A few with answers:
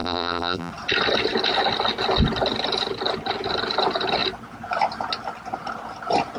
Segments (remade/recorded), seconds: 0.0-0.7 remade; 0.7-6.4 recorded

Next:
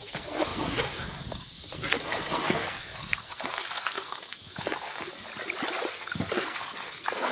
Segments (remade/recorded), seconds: 0.0-5.3 remade; 5.3-5.9 recorded; 5.9-7.3 remade

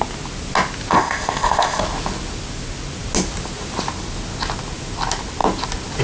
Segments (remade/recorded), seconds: 0.0-0.9 recorded; 0.9-1.8 remade; 1.8-6.0 recorded

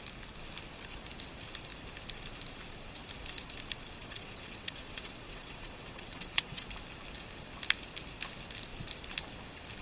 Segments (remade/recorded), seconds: 0.0-4.0 recorded; 4.0-6.7 remade; 6.7-9.8 recorded

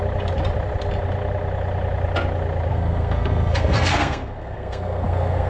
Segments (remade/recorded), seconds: 0.0-2.7 recorded; 2.7-5.5 remade